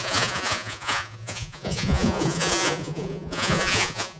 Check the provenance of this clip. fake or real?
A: fake